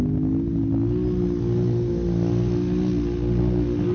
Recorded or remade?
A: recorded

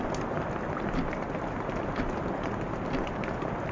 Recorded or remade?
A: recorded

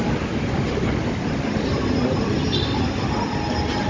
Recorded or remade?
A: recorded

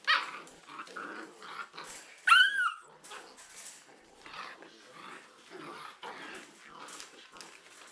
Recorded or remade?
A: recorded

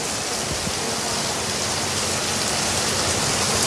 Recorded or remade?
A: recorded